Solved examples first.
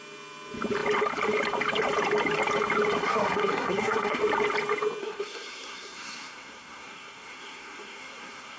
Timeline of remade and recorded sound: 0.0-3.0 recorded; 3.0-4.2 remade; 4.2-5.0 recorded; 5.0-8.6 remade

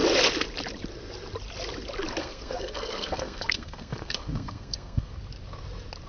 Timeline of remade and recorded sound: 0.0-2.2 recorded; 2.2-5.1 remade; 5.1-6.1 recorded

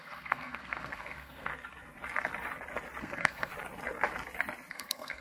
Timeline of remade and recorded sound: 0.0-1.5 remade; 1.5-3.0 recorded; 3.0-3.5 remade; 3.5-4.7 recorded; 4.7-5.2 remade

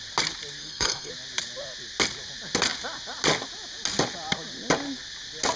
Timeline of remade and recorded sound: 0.0-0.6 recorded; 0.6-1.1 remade; 1.1-5.6 recorded

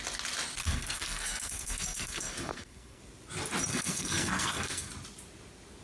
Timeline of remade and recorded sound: 0.0-0.6 recorded; 0.6-3.0 remade; 3.0-3.7 recorded; 3.7-4.9 remade; 4.9-5.8 recorded

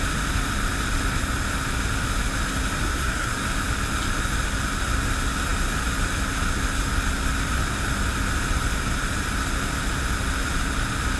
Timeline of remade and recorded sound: 0.0-2.8 recorded; 2.8-3.3 remade; 3.3-11.2 recorded